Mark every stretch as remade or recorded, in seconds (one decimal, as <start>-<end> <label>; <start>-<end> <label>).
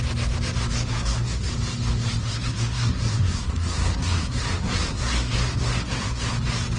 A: 0.0-0.9 recorded; 0.9-1.5 remade; 1.5-2.2 recorded; 2.2-6.3 remade; 6.3-6.8 recorded